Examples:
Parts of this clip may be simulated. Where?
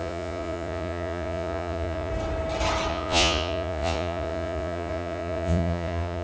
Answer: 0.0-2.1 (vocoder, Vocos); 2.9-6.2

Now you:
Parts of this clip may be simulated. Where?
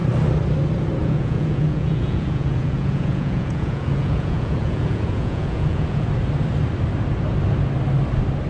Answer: 1.0-6.1 (vocoder, Vocos)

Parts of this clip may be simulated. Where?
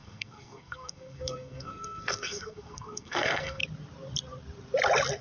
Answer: 0.0-3.6 (codec, SNAC)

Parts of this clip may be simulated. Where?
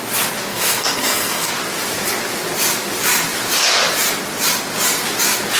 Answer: 0.5-1.5 (codec, SNAC)